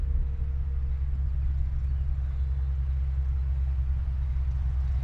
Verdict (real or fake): real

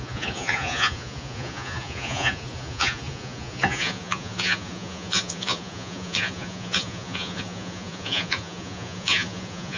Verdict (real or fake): fake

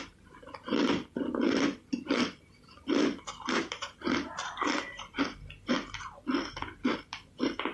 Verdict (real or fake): fake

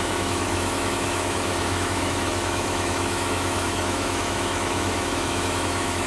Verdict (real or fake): fake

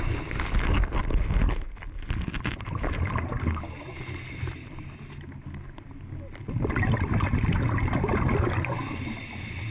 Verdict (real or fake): real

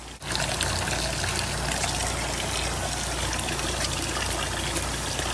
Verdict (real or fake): real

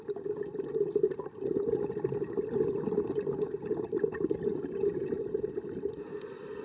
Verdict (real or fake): real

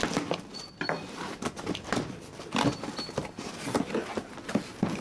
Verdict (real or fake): real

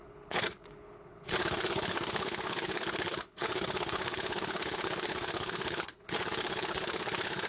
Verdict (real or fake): fake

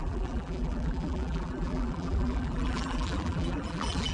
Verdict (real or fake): fake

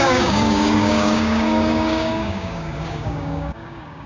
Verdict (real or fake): fake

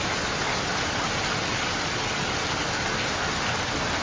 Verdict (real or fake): real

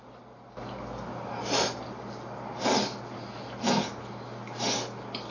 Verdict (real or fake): real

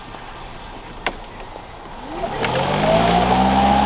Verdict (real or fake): real